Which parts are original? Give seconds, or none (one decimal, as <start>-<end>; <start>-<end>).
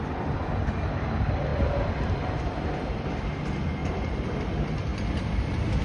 0.0-1.5; 3.1-3.8; 4.4-5.8